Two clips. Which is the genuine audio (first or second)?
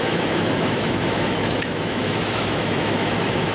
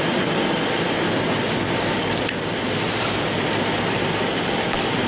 second